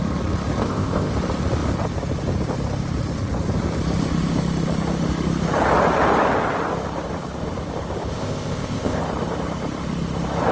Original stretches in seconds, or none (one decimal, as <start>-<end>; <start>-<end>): 0.0-0.6; 1.1-8.1; 9.0-10.5